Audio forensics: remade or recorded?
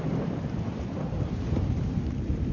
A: remade